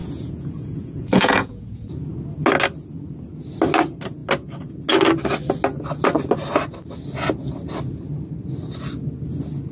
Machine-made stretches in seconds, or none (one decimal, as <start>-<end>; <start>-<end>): 0.0-1.8